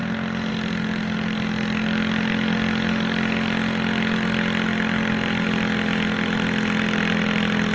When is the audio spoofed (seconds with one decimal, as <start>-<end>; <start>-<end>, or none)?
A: none